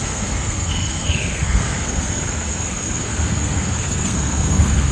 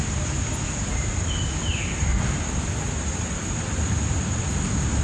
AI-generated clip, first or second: first